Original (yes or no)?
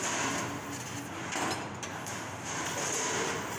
yes